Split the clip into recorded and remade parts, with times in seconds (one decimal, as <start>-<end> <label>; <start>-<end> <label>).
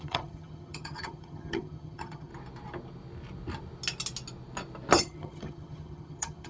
0.0-2.3 remade; 2.3-5.0 recorded; 5.0-6.5 remade